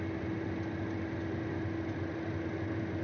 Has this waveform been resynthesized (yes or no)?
no